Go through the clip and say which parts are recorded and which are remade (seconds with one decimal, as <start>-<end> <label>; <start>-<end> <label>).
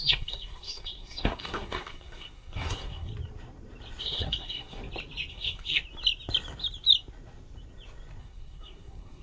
0.0-3.1 remade; 3.1-4.0 recorded; 4.0-4.8 remade; 4.8-5.3 recorded; 5.3-5.8 remade; 5.8-8.2 recorded; 8.2-9.2 remade